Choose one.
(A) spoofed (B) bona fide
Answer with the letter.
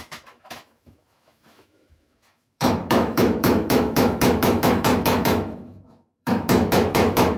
A